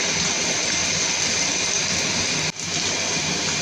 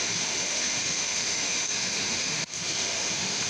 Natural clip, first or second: first